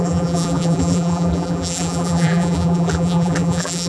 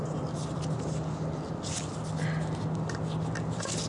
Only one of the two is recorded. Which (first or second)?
second